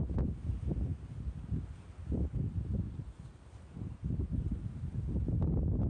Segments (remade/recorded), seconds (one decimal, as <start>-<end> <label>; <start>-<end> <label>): 0.0-5.9 recorded